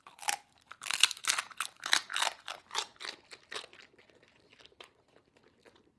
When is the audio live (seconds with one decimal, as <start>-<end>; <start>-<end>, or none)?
2.1-3.6